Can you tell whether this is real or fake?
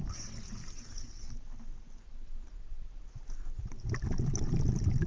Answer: real